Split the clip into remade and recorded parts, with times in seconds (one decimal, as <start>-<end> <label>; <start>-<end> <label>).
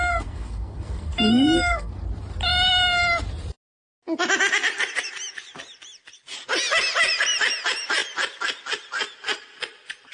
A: 0.0-1.9 remade; 1.9-10.1 recorded